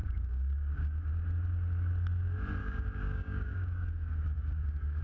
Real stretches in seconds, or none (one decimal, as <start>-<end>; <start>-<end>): 1.1-2.6